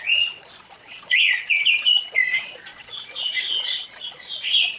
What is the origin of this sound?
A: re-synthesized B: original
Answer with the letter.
A